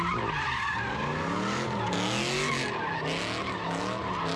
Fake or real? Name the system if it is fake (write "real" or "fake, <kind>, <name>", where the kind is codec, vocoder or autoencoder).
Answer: real